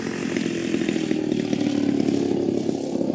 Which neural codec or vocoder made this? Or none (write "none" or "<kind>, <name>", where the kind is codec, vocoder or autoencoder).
none